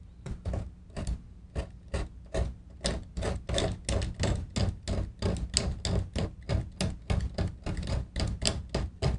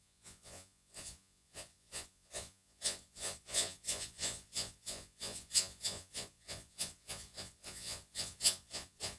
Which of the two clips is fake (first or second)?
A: second